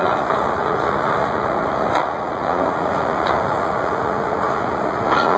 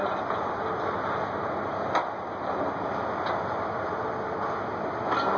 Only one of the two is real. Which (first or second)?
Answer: second